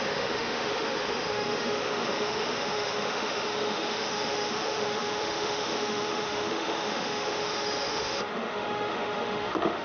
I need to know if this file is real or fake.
fake